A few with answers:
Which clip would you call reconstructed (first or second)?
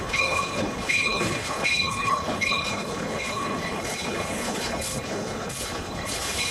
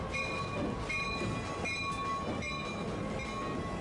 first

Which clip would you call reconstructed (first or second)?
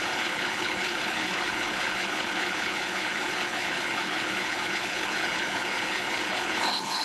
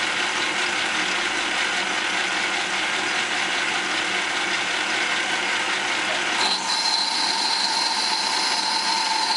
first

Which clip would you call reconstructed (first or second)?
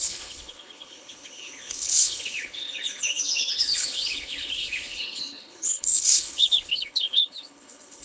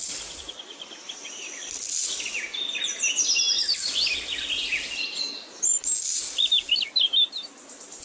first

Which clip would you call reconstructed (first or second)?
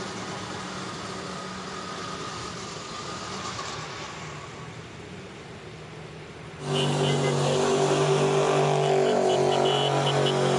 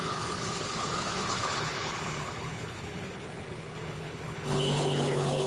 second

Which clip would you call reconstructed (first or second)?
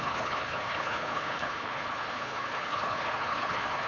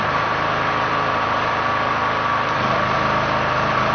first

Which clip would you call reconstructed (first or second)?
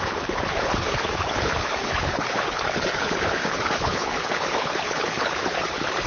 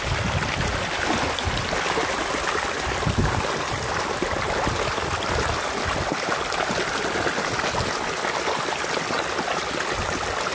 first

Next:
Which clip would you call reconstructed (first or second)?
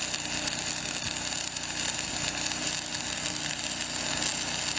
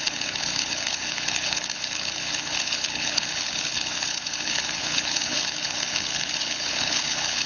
second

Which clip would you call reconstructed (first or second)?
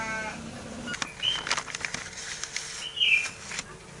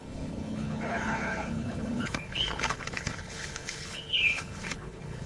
second